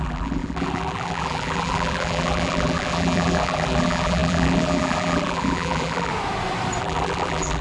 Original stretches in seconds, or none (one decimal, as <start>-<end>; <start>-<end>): 6.1-6.8

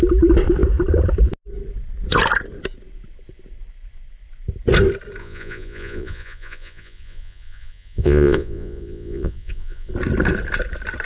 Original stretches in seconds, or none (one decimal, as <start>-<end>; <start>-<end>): 0.0-5.2; 9.9-11.1

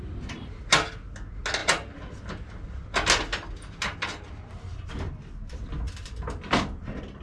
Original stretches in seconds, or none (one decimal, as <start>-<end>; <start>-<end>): 0.0-7.2

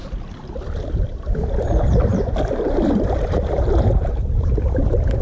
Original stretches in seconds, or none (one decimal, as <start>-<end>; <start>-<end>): 0.0-2.1; 3.7-5.2

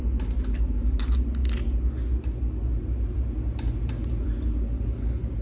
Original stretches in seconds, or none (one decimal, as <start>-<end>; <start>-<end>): 0.0-5.4

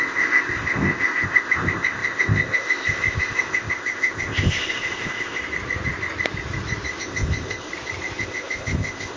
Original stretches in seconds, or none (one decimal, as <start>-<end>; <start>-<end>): 5.4-7.0; 7.7-8.2

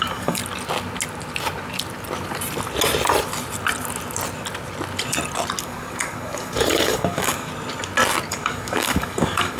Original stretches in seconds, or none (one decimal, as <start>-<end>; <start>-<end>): 0.4-5.6; 7.5-8.3

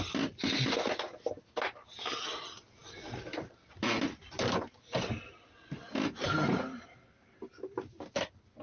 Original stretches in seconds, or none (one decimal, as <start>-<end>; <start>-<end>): 0.0-8.6